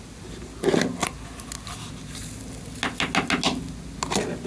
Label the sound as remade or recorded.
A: recorded